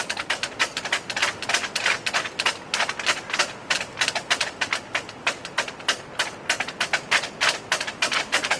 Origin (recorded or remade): recorded